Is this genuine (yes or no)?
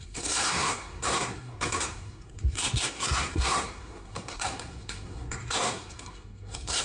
no